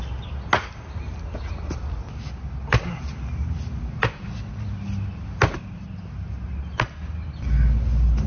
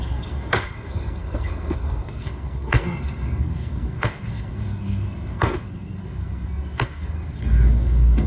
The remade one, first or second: second